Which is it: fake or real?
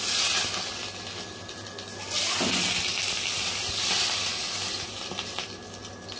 real